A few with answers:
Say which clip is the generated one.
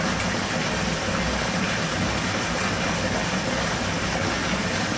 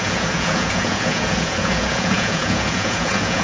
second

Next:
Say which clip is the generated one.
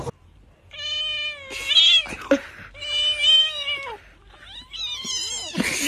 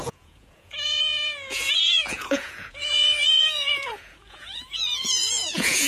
second